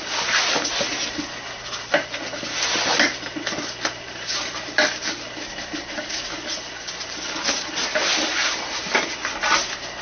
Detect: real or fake real